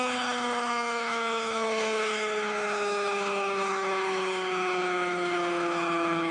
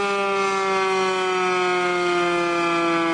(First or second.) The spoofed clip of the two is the first